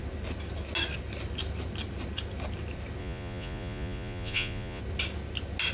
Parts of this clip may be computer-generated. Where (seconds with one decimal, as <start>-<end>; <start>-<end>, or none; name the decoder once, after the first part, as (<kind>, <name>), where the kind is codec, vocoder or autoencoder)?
3.0-4.8 (vocoder, Vocos)